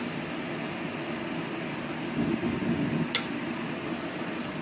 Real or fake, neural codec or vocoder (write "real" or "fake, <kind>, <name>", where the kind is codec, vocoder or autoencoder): real